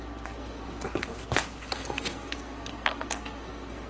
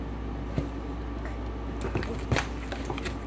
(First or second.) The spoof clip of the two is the first